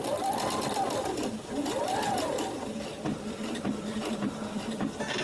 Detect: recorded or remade remade